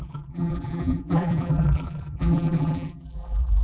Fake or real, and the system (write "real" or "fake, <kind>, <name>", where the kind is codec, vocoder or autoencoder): fake, vocoder, BigVGAN v2